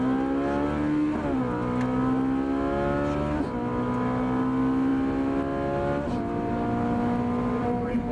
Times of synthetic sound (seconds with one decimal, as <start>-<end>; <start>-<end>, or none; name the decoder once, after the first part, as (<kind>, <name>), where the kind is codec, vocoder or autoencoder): none